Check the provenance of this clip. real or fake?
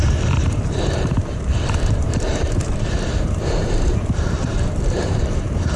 fake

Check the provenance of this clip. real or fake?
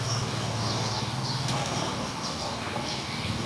fake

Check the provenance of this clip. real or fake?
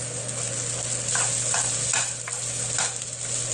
real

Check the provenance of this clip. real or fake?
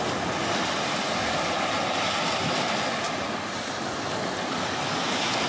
real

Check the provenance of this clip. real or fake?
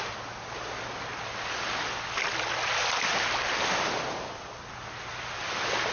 real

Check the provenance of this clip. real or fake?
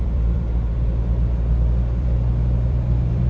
fake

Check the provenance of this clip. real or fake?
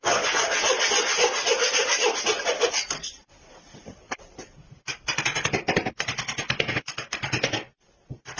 real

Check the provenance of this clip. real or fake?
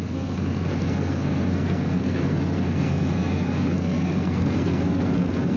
fake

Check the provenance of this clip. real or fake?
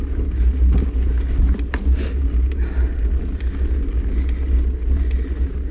real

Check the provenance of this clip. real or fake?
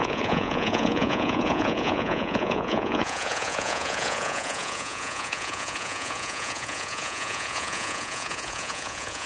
fake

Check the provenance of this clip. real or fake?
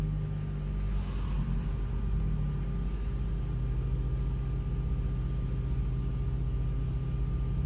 real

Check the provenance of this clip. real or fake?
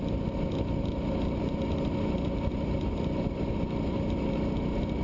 real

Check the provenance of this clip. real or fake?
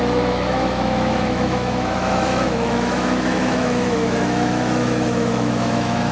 fake